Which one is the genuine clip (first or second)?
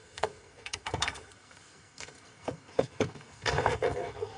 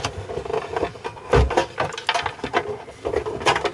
second